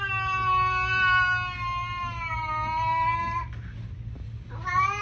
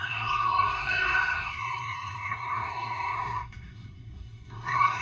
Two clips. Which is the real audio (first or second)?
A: first